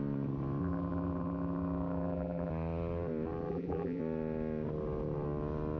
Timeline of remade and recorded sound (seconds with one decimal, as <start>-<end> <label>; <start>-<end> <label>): 0.0-0.6 recorded; 0.6-2.5 remade; 2.5-3.5 recorded; 3.5-4.0 remade; 4.0-5.8 recorded